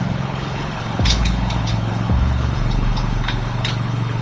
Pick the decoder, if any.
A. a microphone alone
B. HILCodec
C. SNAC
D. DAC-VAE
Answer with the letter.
B